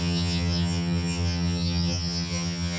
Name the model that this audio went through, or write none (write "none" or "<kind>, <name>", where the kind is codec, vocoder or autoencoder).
vocoder, HiFi-GAN